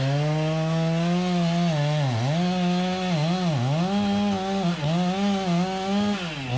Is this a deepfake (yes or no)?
no